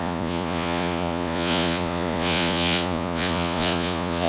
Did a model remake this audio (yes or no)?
yes